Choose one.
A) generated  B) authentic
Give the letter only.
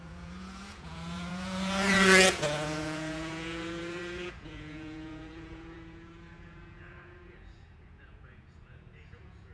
A